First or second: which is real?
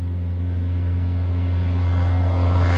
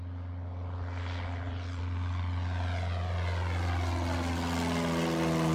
second